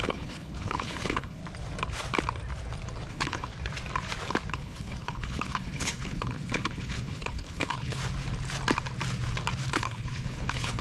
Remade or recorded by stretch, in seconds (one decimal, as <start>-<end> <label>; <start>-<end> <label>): 0.0-1.4 remade; 1.4-3.1 recorded; 3.1-3.5 remade; 3.5-4.5 recorded; 4.5-8.0 remade; 8.0-9.7 recorded; 9.7-10.8 remade